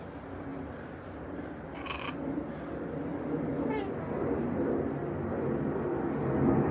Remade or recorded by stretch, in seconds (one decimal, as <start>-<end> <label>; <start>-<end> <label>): 0.0-6.7 recorded